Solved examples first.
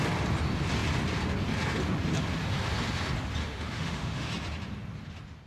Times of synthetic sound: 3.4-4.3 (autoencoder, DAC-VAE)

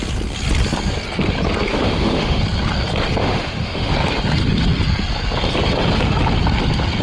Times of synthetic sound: 1.7-2.4 (autoencoder, DAC-VAE); 3.2-3.9